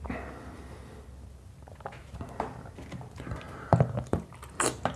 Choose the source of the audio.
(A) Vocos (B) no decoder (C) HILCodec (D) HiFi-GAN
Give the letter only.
B